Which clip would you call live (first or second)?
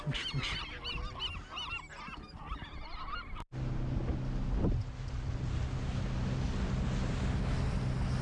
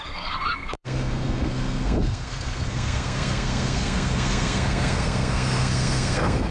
first